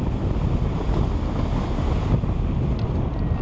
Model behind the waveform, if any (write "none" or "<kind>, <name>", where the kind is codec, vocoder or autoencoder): none